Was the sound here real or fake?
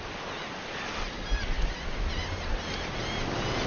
real